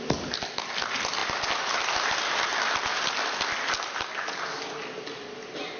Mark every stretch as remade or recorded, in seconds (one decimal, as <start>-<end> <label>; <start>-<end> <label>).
0.0-5.8 recorded